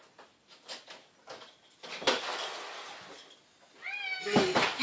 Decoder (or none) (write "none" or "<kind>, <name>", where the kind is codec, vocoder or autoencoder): none